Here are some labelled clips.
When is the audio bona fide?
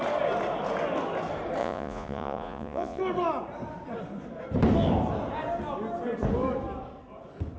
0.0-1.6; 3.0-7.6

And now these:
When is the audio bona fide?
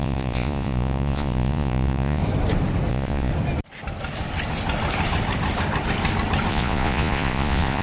2.2-2.9; 3.3-6.5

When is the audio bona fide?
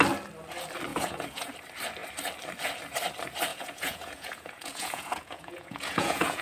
0.0-0.9; 1.5-3.5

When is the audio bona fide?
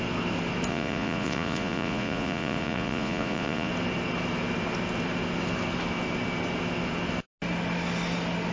0.0-0.7; 3.7-8.5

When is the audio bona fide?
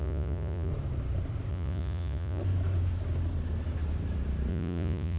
0.7-1.5; 2.4-4.5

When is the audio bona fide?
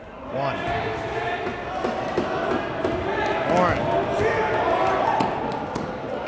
0.0-6.3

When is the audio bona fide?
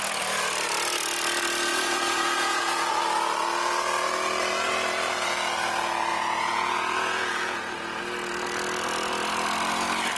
0.0-1.7; 2.9-6.1; 8.0-10.2